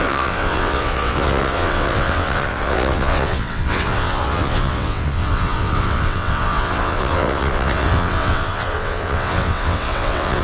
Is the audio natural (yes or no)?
no